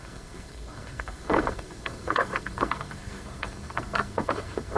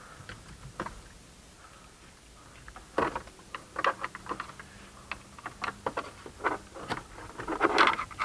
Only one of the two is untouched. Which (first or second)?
second